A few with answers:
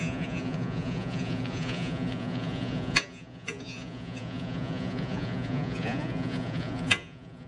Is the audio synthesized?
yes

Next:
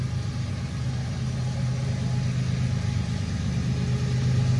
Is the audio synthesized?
no